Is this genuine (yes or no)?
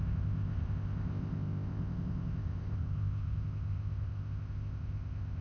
no